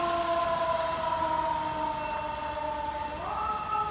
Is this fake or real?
real